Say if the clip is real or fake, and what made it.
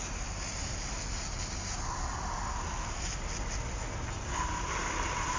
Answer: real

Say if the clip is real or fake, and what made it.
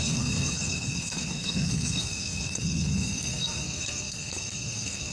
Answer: fake, codec, SNAC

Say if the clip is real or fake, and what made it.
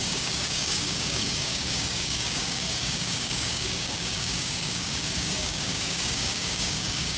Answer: fake, codec, DAC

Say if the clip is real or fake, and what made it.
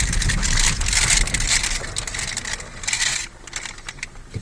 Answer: fake, vocoder, BigVGAN v2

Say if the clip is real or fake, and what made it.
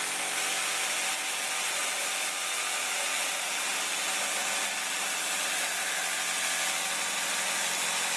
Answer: real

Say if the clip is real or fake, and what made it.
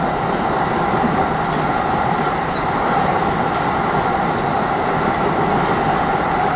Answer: real